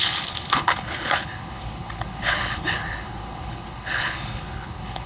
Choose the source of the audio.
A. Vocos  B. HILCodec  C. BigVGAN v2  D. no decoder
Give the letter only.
B